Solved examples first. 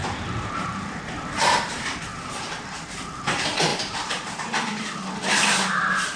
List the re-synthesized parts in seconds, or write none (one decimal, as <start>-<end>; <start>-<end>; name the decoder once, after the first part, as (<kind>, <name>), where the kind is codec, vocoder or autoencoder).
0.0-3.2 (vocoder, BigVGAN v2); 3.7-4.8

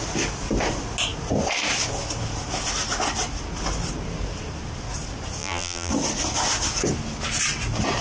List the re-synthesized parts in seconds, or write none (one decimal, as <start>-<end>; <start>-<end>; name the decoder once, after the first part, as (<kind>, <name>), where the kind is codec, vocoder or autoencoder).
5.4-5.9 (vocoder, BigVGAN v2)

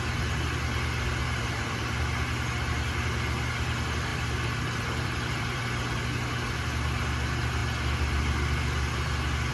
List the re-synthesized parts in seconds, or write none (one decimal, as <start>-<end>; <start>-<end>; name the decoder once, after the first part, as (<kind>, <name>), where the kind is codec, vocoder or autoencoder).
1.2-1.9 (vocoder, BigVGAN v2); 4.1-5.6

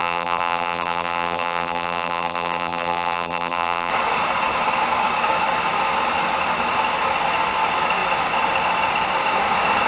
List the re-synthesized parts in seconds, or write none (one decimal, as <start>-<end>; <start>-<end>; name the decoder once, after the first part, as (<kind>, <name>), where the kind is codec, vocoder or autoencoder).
0.0-3.9 (vocoder, BigVGAN v2)